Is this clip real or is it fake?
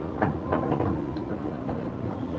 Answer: fake